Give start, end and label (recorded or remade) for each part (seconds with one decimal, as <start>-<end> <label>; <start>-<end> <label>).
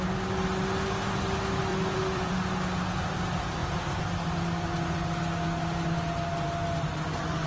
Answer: 0.0-1.7 recorded; 1.7-2.3 remade; 2.3-7.5 recorded